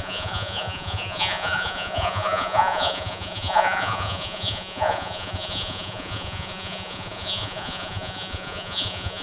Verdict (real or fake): fake